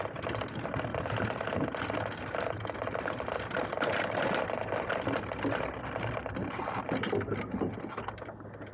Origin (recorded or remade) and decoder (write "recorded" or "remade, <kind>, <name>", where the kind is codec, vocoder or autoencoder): recorded